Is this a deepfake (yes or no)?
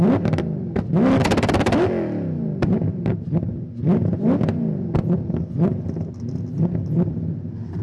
no